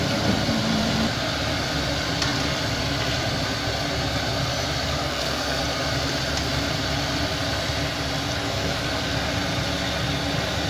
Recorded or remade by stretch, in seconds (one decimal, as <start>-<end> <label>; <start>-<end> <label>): 0.0-5.0 recorded; 5.0-5.6 remade; 5.6-8.5 recorded; 8.5-9.0 remade; 9.0-10.7 recorded